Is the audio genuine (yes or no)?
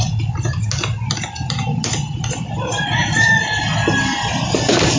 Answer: yes